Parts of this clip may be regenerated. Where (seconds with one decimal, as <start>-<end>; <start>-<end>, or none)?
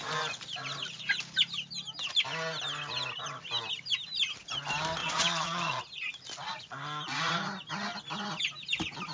5.0-5.8